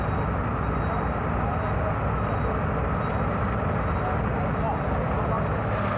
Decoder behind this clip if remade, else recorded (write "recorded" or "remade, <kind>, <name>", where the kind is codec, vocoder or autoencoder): recorded